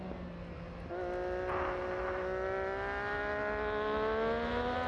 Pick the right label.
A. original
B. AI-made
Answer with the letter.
A